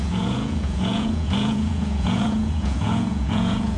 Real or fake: fake